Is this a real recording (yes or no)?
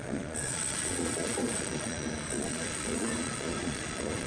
no